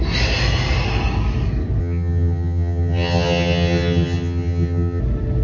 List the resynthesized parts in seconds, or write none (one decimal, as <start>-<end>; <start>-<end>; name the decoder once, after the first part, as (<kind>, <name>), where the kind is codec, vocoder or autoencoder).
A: 1.8-5.0 (vocoder, HiFi-GAN)